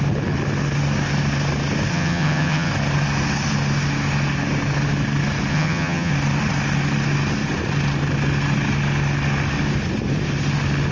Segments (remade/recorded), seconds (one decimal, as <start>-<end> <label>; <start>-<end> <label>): 0.0-1.9 recorded; 1.9-2.7 remade; 2.7-5.5 recorded; 5.5-6.1 remade; 6.1-10.9 recorded